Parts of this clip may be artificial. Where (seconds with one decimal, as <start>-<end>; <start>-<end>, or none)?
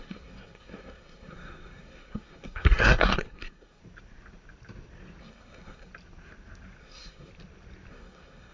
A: 0.0-3.8; 5.2-5.9; 6.8-7.3; 7.9-8.5